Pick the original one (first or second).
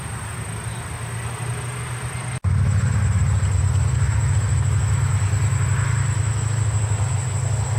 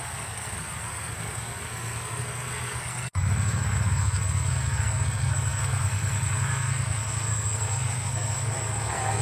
first